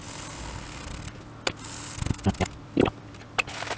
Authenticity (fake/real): real